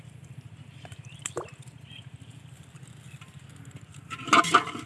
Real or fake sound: real